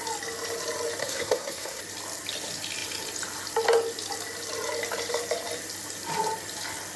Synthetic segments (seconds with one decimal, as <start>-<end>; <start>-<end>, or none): 1.0-1.8